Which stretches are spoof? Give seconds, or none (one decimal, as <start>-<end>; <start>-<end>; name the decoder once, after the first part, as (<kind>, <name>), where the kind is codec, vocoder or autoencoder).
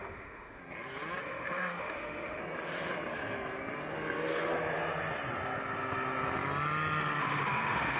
0.0-0.6 (autoencoder, DAC-VAE); 1.2-2.4; 7.2-8.0